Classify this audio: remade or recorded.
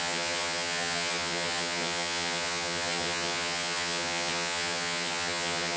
remade